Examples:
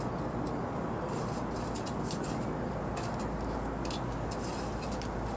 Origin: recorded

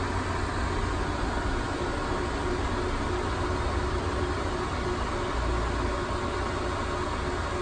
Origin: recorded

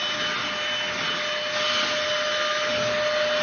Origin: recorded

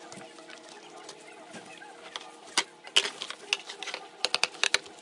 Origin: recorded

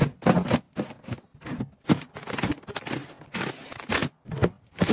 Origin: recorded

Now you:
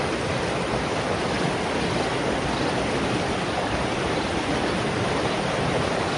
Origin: recorded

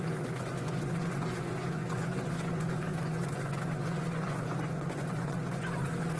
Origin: remade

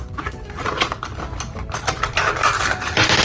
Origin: remade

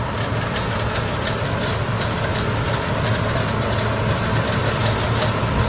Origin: recorded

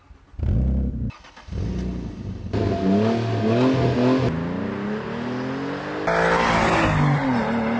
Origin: recorded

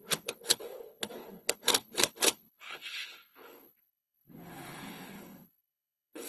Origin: remade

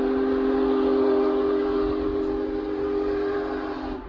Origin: recorded